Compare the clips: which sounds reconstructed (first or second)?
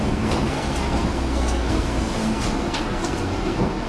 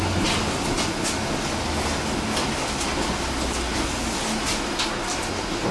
first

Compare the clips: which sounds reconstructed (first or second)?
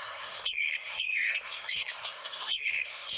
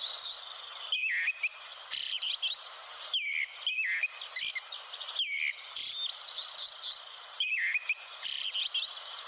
first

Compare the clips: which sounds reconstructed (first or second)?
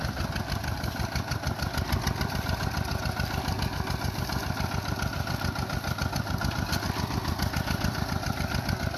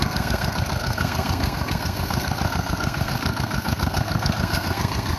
second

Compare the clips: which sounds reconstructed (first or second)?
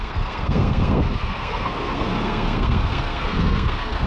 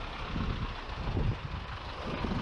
first